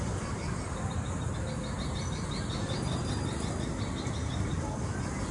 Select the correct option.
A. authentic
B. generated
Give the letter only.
A